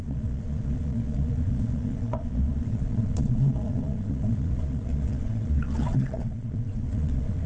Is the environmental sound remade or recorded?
remade